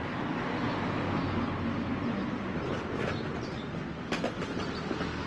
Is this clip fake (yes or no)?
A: no